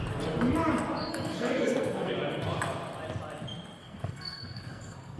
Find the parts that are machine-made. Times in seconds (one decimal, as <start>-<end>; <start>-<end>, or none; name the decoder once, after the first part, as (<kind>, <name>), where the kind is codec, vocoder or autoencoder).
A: 1.1-2.1 (codec, SNAC); 3.8-5.2